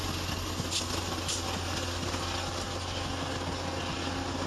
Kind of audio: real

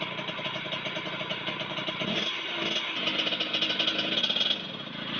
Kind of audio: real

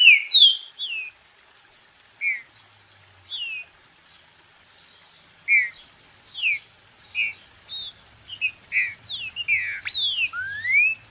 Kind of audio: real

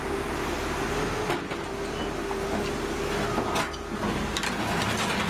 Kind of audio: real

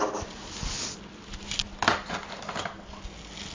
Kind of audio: real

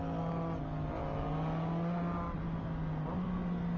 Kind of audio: real